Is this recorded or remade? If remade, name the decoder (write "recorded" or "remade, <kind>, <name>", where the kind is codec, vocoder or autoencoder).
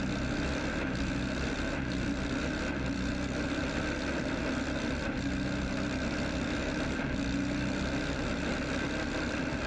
recorded